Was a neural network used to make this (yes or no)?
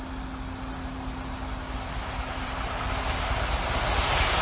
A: no